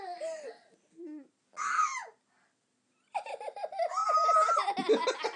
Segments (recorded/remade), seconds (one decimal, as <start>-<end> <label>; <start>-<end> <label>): 0.0-5.4 recorded